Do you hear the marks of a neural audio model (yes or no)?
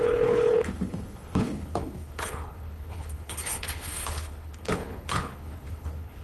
yes